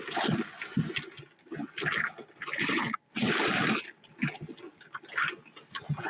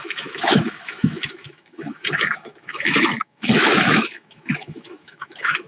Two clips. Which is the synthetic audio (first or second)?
second